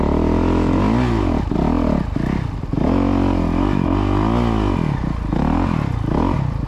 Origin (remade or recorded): recorded